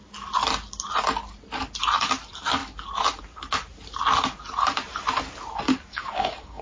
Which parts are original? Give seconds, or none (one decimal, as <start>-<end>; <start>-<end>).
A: 0.0-5.9